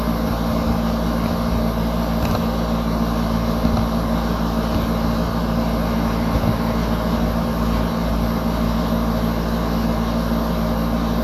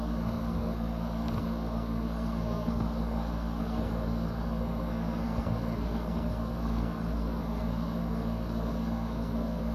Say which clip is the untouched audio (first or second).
first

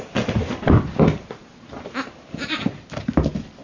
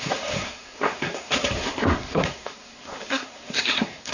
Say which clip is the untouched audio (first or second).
first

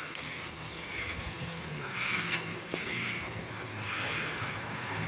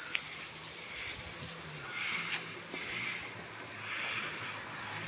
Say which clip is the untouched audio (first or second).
second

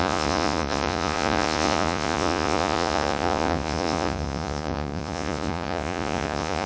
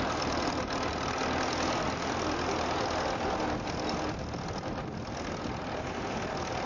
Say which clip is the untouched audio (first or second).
second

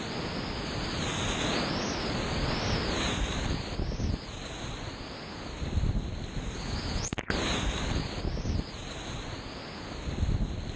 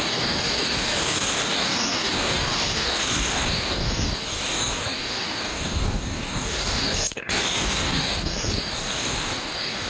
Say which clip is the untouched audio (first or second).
first